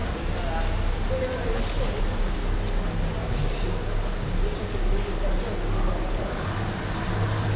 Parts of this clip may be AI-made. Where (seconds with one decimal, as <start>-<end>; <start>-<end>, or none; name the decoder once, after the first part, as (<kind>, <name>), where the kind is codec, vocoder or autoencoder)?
none